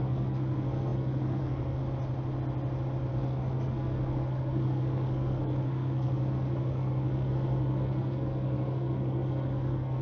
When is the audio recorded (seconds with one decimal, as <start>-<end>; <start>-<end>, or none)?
1.8-3.1